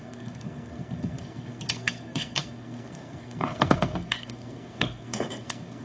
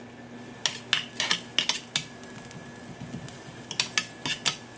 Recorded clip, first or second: second